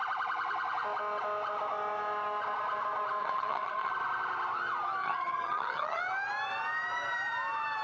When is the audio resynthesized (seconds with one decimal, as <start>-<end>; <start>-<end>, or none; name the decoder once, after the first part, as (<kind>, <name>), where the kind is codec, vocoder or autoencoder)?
3.2-3.9 (vocoder, HiFi-GAN); 5.0-6.0